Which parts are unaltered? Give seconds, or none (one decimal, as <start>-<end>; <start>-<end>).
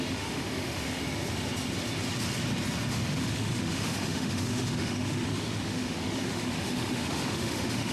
1.0-2.9